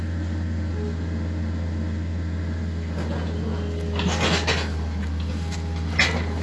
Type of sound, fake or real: real